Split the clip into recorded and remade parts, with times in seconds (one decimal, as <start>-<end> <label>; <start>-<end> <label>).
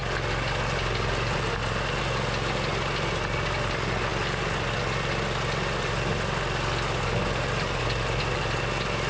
0.0-9.1 recorded